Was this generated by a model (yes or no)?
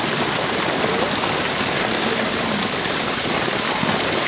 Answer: no